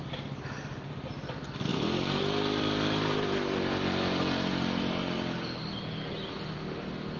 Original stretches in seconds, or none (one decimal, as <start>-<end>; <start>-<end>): 3.3-4.2; 5.0-5.6